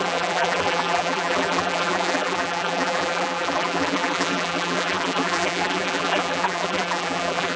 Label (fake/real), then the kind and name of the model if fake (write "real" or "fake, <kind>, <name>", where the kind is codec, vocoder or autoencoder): fake, vocoder, BigVGAN v2